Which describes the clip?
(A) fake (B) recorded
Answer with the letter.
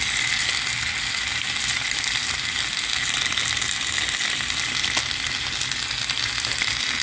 B